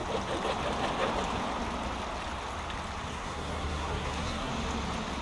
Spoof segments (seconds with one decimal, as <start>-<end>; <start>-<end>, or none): 3.1-4.5